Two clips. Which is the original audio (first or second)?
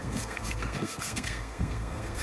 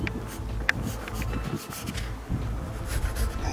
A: second